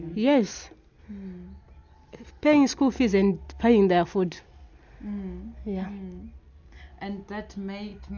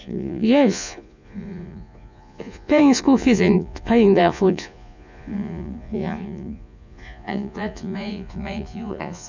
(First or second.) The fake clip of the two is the second